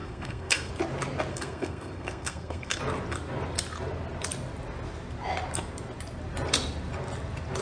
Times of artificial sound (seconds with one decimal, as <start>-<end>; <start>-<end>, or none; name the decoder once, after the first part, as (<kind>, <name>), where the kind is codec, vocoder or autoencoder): 0.0-0.7 (codec, SNAC); 1.3-2.8